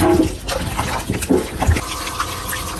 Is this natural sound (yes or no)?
yes